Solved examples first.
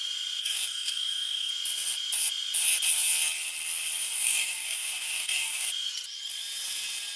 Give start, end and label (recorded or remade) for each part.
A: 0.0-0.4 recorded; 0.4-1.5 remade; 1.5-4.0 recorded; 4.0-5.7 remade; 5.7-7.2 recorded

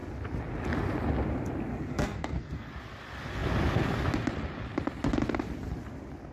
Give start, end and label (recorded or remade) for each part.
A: 0.0-1.7 recorded; 1.7-2.7 remade; 2.7-6.3 recorded

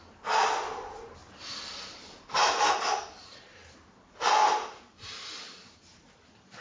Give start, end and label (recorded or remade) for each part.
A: 0.0-6.6 recorded